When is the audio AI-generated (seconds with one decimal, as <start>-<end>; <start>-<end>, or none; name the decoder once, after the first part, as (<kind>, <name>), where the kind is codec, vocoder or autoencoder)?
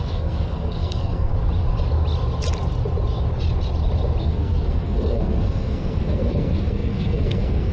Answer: 0.0-1.3 (codec, SNAC); 4.2-7.7